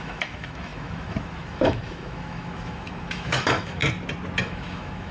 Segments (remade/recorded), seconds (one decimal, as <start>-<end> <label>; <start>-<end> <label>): 0.0-3.8 remade; 3.8-4.4 recorded; 4.4-5.1 remade